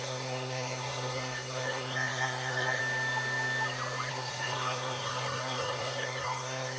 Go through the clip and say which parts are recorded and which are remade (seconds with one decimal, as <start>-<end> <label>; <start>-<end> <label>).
0.0-2.8 remade; 2.8-4.1 recorded; 4.1-6.8 remade